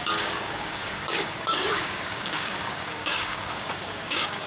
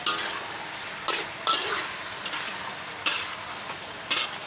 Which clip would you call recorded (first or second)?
second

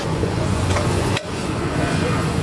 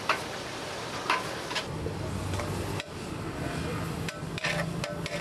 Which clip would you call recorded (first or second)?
second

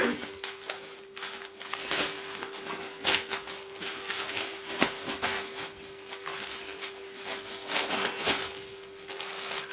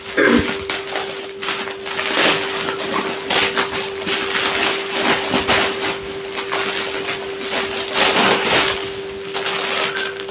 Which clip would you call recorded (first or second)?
second